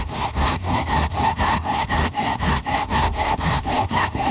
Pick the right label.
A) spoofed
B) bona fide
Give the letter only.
A